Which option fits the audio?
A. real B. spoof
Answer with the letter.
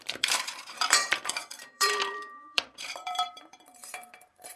B